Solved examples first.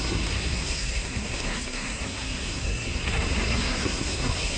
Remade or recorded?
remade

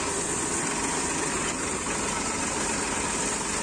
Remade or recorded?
recorded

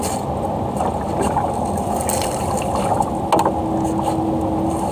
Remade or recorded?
recorded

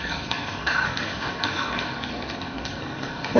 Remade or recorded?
remade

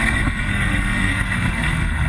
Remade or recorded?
remade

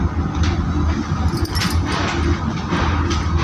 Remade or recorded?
recorded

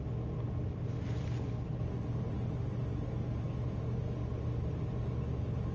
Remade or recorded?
recorded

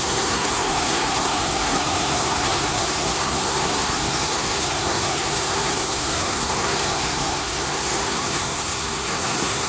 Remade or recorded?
remade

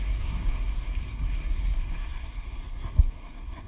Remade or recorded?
remade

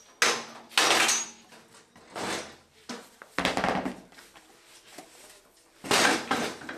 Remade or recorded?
recorded